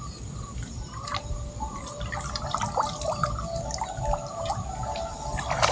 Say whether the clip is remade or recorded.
recorded